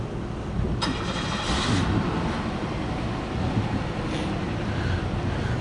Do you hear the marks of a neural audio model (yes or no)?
no